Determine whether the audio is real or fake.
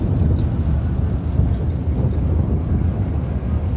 real